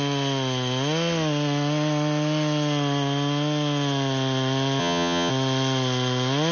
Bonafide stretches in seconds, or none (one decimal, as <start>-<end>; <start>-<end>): 0.0-4.8; 5.3-6.5